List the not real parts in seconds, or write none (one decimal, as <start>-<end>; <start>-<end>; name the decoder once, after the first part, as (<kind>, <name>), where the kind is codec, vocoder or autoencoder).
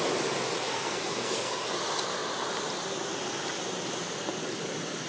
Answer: 0.7-1.6 (codec, SNAC)